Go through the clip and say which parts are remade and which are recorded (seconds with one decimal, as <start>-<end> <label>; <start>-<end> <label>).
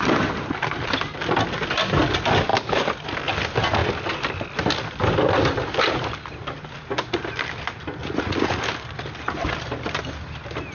0.0-8.0 recorded; 8.0-8.6 remade; 8.6-10.7 recorded